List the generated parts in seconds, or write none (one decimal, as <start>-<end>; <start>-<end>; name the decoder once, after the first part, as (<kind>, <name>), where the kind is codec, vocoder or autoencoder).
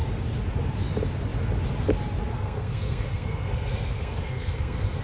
2.3-5.0 (codec, SNAC)